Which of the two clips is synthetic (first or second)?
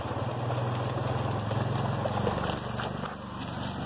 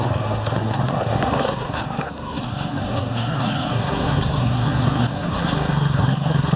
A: second